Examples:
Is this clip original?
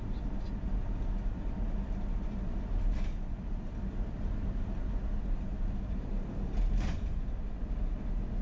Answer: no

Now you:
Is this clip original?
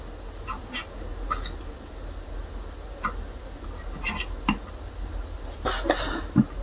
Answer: yes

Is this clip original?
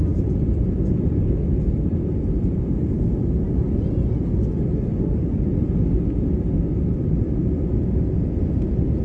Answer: yes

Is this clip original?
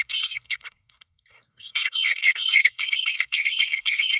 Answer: no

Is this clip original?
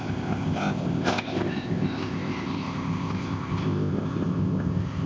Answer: no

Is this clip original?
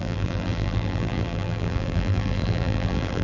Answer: no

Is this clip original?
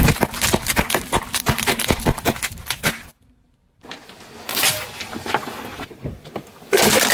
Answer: yes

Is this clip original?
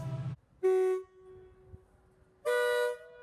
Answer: yes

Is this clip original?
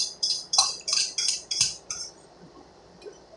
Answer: no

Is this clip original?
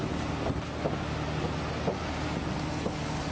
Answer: yes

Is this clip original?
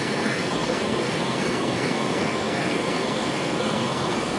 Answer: no